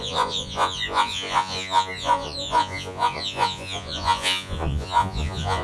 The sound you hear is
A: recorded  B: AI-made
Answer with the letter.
B